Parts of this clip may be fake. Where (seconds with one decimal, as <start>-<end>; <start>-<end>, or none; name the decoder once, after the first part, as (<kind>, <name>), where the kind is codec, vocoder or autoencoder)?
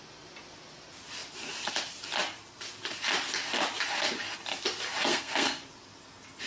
5.1-5.6 (codec, SNAC)